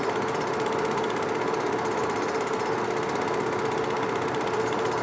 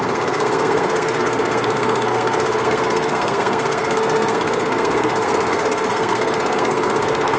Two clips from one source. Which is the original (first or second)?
first